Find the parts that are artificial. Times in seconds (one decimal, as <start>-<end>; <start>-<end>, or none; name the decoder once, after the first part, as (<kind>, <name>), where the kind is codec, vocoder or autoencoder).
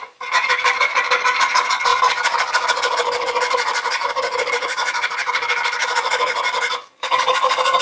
0.0-7.8 (codec, DAC)